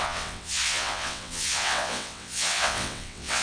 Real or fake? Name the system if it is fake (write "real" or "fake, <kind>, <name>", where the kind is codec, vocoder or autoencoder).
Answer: fake, vocoder, WaveNeXt